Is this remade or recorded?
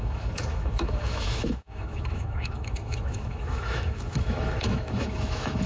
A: remade